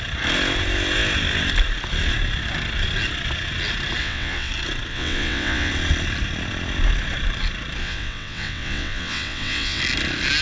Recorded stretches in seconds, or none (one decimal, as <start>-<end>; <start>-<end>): 0.0-4.0; 4.5-4.9; 5.7-7.8; 9.8-10.4